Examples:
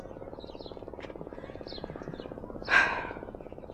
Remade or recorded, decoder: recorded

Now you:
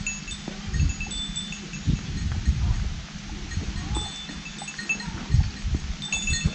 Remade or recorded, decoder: recorded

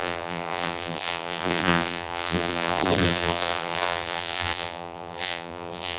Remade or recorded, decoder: remade, vocoder, BigVGAN v2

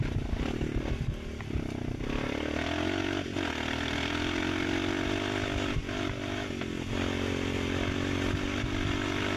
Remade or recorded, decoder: recorded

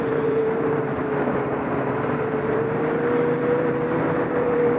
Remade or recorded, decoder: remade, vocoder, BigVGAN v2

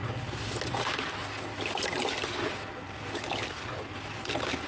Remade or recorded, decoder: recorded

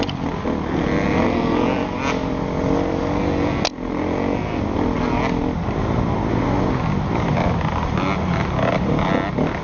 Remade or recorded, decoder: recorded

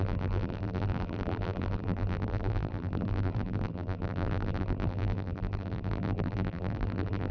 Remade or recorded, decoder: remade, vocoder, BigVGAN v2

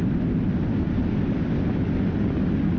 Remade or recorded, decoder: recorded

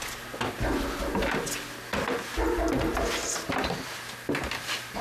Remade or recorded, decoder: recorded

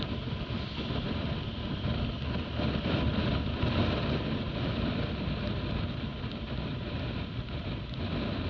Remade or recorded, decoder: remade, vocoder, BigVGAN v2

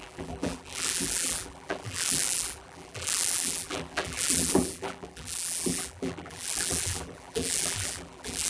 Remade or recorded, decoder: remade, vocoder, BigVGAN v2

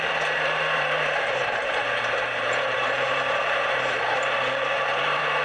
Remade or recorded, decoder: remade, vocoder, BigVGAN v2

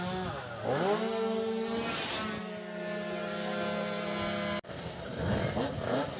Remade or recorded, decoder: recorded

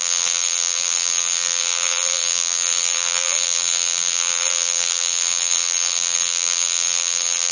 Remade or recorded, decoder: remade, vocoder, BigVGAN v2